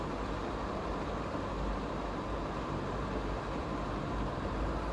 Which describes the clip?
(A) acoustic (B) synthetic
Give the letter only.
B